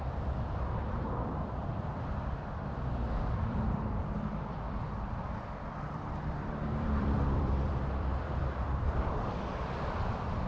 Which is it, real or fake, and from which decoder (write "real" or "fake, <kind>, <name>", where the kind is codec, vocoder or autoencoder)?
fake, vocoder, BigVGAN v2